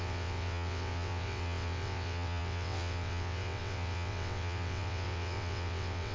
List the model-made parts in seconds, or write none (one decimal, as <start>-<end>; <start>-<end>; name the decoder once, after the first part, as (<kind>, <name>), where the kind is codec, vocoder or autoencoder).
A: 0.0-6.1 (vocoder, WaveNeXt)